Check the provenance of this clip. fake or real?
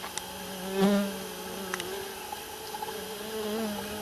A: real